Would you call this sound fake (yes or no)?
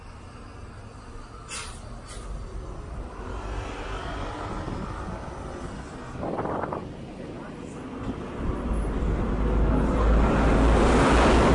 no